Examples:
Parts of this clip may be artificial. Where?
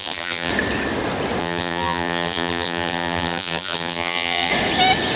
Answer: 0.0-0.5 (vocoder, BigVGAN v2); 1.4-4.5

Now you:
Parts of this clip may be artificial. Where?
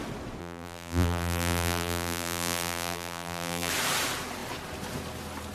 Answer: 0.4-3.7 (vocoder, BigVGAN v2)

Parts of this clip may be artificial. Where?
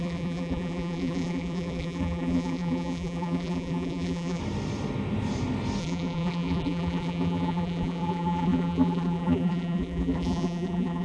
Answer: 0.0-4.4 (vocoder, BigVGAN v2); 5.8-11.0